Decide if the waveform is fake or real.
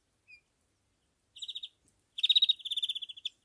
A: real